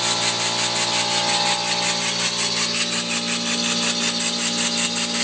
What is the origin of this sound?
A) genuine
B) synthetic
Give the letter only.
A